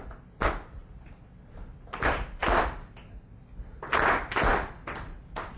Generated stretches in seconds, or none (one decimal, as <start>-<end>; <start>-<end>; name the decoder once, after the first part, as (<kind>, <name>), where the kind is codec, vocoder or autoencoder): none